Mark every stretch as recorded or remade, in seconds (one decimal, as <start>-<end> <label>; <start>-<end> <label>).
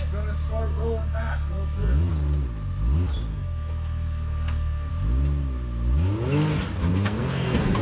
0.0-0.5 recorded; 0.5-2.1 remade; 2.1-3.3 recorded; 3.3-4.9 remade; 4.9-6.9 recorded; 6.9-7.8 remade